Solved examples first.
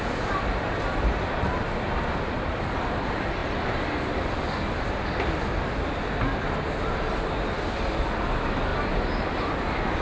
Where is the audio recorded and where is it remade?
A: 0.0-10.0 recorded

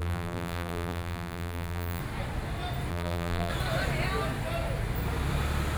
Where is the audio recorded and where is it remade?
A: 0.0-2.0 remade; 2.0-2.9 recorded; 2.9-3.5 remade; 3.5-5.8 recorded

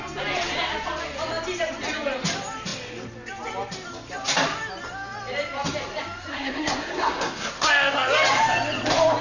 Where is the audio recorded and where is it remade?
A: 0.0-6.3 recorded; 6.3-7.5 remade; 7.5-9.2 recorded

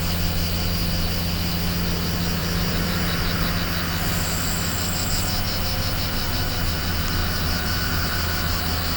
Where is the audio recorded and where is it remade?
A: 0.0-2.4 recorded; 2.4-3.5 remade; 3.5-9.0 recorded

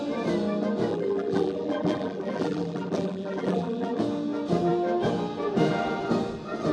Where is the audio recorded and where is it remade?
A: 0.0-0.9 recorded; 0.9-4.0 remade; 4.0-6.7 recorded

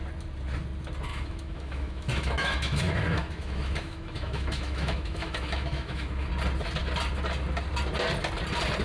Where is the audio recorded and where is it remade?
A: 0.0-1.1 recorded; 1.1-6.3 remade; 6.3-8.8 recorded

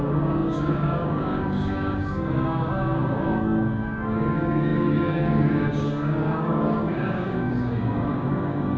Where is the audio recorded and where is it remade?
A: 0.0-8.8 remade

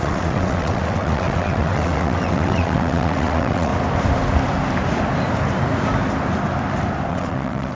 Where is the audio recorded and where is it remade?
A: 0.0-3.7 remade; 3.7-7.1 recorded; 7.1-7.7 remade